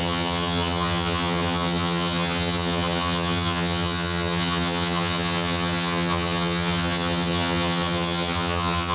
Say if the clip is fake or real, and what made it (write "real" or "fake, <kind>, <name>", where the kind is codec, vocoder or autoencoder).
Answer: fake, vocoder, HiFi-GAN